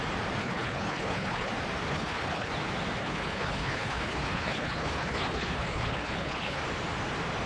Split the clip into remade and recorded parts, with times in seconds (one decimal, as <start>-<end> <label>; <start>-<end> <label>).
0.0-0.4 recorded; 0.4-1.5 remade; 1.5-1.9 recorded; 1.9-2.5 remade; 2.5-3.0 recorded; 3.0-6.6 remade; 6.6-7.5 recorded

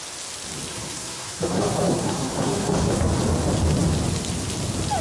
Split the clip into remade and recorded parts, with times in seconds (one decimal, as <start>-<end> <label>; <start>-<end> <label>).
0.0-0.7 recorded; 0.7-3.1 remade; 3.1-5.0 recorded

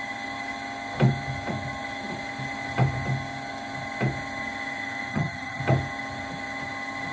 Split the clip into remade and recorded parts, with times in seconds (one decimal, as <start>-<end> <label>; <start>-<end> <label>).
0.0-5.1 recorded; 5.1-5.6 remade; 5.6-7.1 recorded

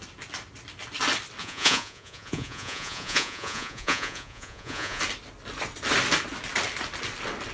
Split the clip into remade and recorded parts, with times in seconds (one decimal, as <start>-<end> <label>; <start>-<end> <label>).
0.0-1.4 recorded; 1.4-5.0 remade; 5.0-7.5 recorded

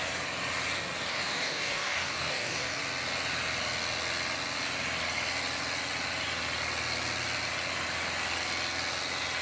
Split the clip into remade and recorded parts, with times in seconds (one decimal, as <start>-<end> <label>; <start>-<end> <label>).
0.0-1.1 recorded; 1.1-2.8 remade; 2.8-9.4 recorded

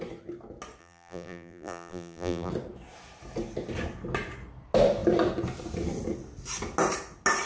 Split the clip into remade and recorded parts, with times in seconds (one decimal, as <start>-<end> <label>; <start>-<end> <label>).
0.0-0.8 recorded; 0.8-2.5 remade; 2.5-7.5 recorded